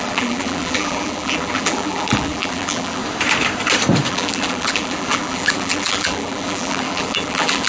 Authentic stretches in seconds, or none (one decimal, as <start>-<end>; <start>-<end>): 3.0-4.1